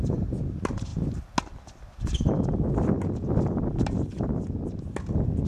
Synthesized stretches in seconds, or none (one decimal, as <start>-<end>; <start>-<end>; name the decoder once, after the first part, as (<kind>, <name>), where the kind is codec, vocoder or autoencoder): none